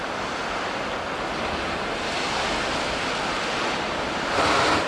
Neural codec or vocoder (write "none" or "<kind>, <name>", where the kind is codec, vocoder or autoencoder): none